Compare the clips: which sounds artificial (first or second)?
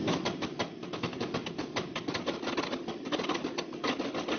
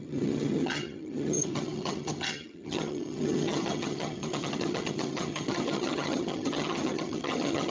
second